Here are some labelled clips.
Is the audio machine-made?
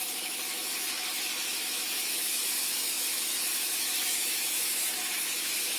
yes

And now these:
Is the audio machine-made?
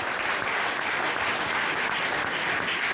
no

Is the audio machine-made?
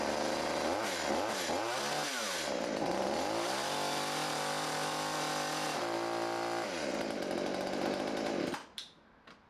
no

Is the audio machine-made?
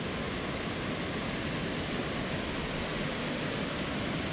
no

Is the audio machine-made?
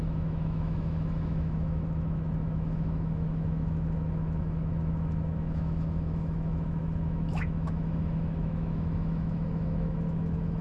yes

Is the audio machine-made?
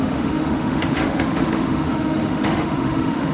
yes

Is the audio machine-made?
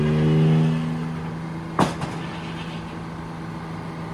no